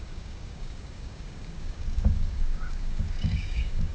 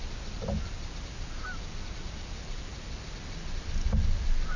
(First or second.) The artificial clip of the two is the first